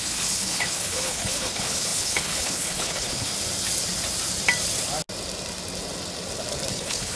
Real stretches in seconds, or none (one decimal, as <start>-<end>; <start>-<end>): 3.3-6.7